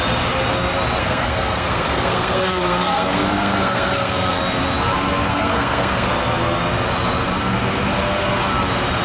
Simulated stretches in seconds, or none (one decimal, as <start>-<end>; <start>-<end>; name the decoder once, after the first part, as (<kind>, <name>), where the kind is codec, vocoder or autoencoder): 1.0-4.4 (codec, SNAC); 5.3-6.1

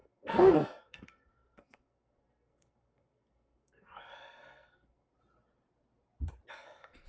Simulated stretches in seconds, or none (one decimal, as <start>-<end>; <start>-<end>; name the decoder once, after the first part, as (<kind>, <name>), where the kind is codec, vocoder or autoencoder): 0.0-5.1 (codec, SNAC); 6.5-7.1

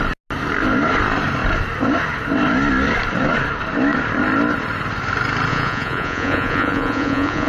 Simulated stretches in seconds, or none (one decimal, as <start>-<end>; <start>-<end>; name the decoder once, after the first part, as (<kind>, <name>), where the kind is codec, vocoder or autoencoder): 5.5-7.5 (vocoder, Vocos)